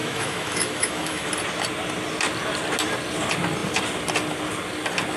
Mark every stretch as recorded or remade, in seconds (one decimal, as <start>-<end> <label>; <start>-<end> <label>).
0.0-1.3 remade; 1.3-5.2 recorded